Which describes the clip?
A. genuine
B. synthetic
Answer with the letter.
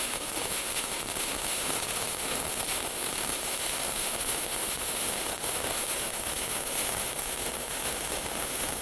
B